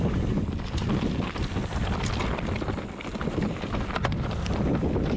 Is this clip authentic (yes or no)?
yes